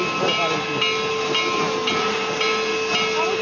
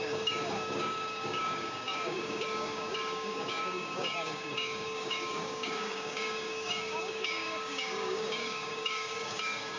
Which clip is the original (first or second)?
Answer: first